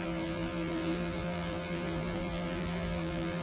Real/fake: fake